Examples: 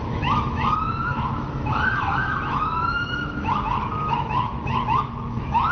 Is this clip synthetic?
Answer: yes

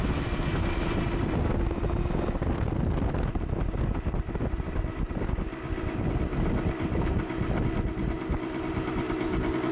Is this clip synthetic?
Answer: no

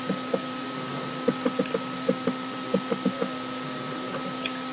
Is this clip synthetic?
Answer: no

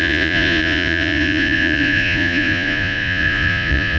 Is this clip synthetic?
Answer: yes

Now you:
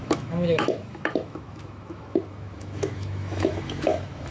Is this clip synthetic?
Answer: yes